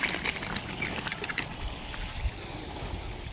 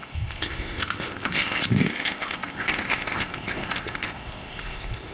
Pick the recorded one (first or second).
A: first